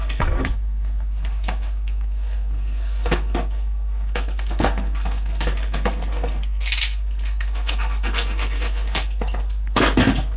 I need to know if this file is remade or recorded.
remade